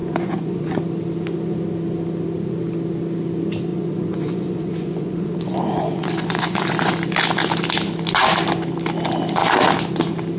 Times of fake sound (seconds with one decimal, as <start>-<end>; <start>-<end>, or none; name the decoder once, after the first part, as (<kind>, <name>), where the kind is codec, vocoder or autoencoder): 0.0-0.8 (vocoder, Vocos); 3.7-6.9